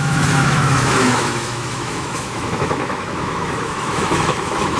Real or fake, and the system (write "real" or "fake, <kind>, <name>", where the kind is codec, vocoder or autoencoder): fake, autoencoder, DAC-VAE